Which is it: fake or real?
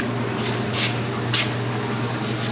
real